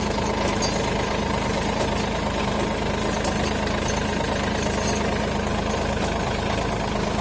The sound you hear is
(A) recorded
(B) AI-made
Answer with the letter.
A